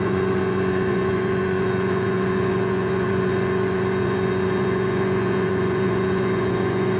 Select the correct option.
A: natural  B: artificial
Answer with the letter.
B